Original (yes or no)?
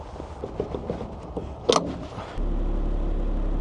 yes